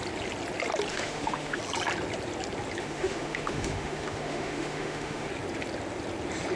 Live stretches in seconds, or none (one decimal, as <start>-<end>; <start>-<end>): 0.0-0.9; 1.6-2.8; 5.3-6.6